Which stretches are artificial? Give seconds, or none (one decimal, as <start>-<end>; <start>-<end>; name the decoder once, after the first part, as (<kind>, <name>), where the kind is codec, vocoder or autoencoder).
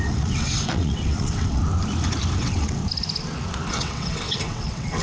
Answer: 0.0-1.6 (vocoder, WaveNeXt); 2.4-2.8; 3.7-5.0